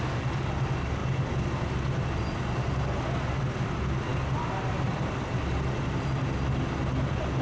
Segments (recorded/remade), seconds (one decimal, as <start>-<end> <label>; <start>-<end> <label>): 0.0-7.4 recorded